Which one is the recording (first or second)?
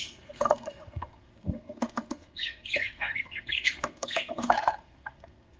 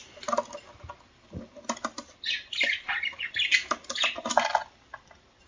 second